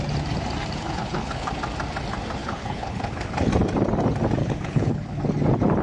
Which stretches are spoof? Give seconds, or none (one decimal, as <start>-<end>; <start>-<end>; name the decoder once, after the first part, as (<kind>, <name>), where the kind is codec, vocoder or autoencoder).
0.8-1.5 (codec, HILCodec); 2.4-3.5; 4.4-5.2